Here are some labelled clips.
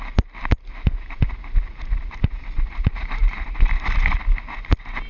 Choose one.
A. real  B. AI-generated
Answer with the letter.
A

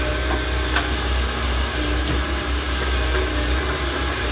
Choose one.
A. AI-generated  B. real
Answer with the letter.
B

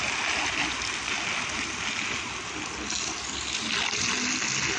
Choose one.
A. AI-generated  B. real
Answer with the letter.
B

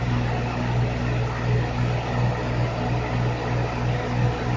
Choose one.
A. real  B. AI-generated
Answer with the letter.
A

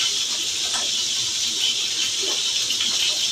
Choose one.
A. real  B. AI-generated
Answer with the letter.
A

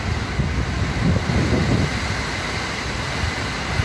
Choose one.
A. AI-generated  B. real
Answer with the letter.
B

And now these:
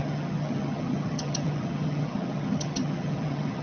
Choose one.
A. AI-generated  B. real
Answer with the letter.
A